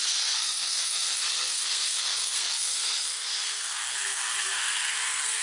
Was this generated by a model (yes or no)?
yes